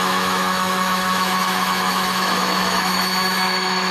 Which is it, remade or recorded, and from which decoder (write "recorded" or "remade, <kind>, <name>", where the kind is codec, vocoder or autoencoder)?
remade, autoencoder, DAC-VAE